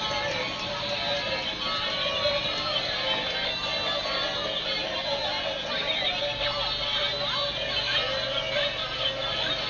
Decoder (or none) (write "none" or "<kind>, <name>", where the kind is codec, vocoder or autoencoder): none